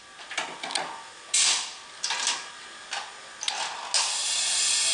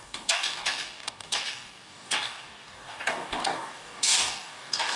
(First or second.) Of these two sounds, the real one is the first